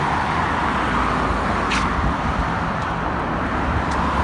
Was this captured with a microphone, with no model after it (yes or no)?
yes